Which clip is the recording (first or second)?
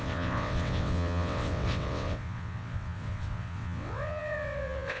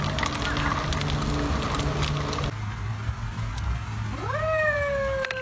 second